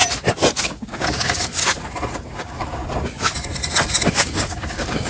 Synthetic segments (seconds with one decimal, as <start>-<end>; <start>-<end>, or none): 0.6-1.6; 2.1-2.8; 4.1-5.1